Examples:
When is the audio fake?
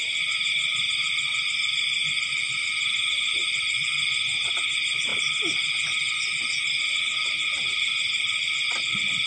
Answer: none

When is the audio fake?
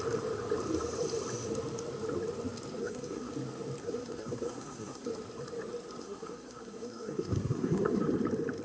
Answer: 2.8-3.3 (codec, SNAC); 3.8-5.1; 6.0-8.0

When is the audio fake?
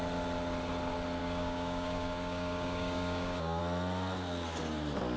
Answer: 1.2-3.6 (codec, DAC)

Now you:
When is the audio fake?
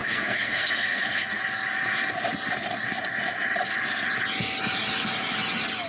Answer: 0.0-1.4 (codec, SNAC)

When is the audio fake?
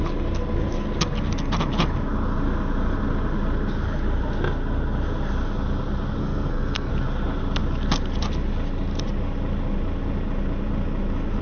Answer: 6.2-6.9 (codec, SNAC)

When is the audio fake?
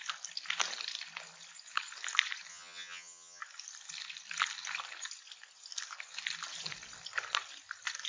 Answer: 2.5-3.4 (vocoder, HiFi-GAN)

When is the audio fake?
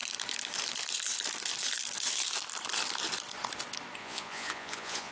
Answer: 4.0-5.1 (vocoder, Vocos)